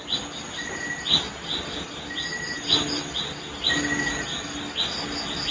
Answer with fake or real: real